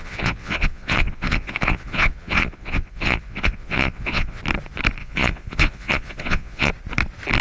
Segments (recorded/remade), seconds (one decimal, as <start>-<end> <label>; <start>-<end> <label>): 0.0-4.4 remade; 4.4-5.0 recorded; 5.0-6.7 remade; 6.7-7.4 recorded